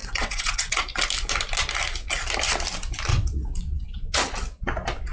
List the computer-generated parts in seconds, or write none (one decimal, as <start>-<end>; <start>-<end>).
0.0-0.8; 3.1-4.1